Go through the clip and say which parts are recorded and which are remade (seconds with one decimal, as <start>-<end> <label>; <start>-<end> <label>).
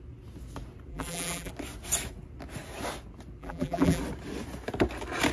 0.0-0.9 recorded; 0.9-1.5 remade; 1.5-3.4 recorded; 3.4-4.0 remade; 4.0-5.3 recorded